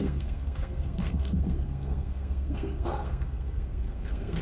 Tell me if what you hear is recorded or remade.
remade